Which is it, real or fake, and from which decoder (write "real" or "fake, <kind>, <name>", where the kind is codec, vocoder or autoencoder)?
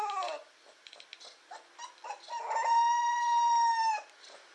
real